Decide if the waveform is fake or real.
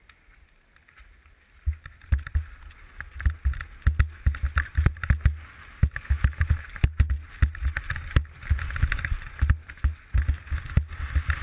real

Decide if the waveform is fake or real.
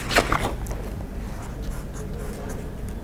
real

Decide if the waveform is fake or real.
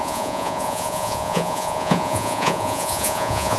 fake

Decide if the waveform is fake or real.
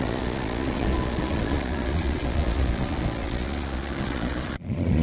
fake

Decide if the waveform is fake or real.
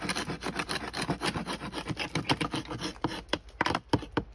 real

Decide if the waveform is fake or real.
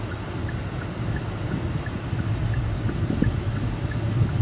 real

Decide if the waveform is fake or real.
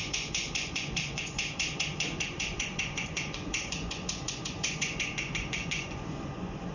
fake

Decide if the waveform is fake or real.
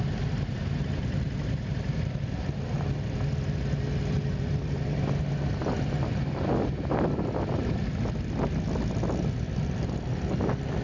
real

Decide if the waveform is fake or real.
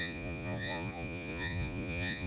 fake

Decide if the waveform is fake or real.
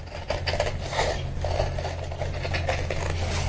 real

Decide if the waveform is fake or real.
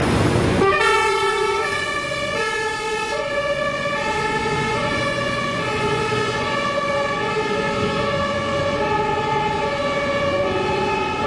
fake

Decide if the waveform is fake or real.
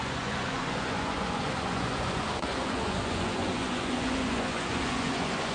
fake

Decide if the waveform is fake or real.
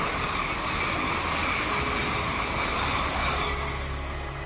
real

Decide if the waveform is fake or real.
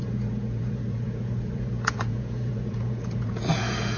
fake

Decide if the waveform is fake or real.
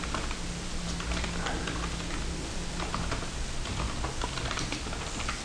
real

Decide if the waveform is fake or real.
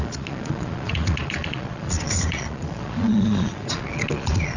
fake